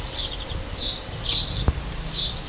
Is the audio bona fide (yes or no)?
yes